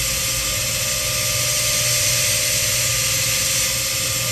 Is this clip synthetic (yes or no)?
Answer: no